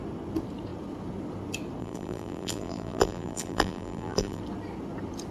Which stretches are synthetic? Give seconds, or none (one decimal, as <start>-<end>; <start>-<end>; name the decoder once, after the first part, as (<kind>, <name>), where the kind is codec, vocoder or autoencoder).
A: 1.8-4.4 (vocoder, BigVGAN v2)